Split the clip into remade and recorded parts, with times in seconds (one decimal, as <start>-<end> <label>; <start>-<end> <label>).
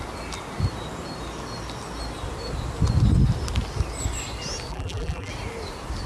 0.0-4.7 recorded; 4.7-5.3 remade; 5.3-6.1 recorded